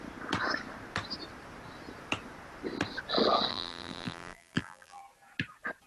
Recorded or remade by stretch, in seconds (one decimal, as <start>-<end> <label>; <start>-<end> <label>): 0.0-3.5 recorded; 3.5-5.0 remade; 5.0-5.9 recorded